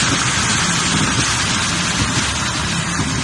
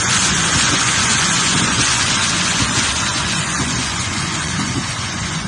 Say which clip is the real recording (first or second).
first